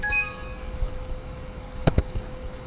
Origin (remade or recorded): remade